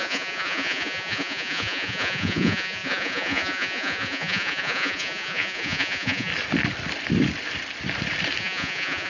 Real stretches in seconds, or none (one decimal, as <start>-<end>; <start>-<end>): 6.3-8.4